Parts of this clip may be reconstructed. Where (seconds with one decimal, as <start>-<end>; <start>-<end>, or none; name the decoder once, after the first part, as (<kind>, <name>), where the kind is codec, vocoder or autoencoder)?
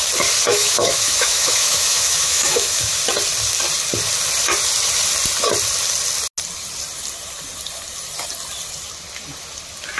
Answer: 0.5-3.0 (autoencoder, DAC-VAE)